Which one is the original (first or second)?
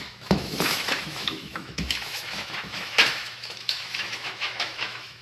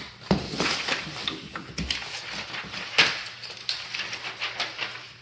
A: second